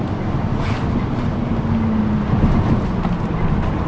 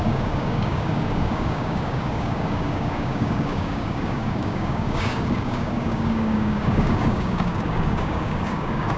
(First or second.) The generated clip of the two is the second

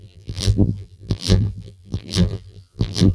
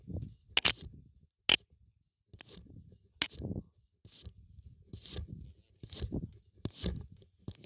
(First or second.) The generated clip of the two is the first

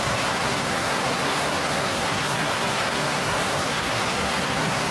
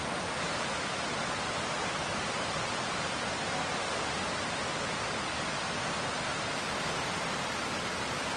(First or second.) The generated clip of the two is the first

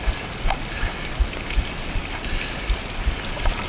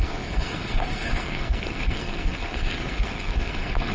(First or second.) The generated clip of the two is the second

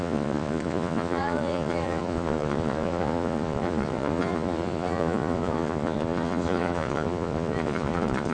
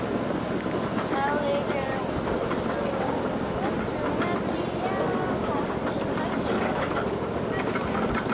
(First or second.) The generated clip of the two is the first